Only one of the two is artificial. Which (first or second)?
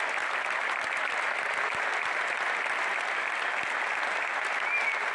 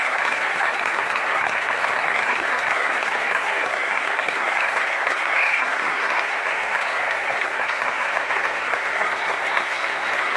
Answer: second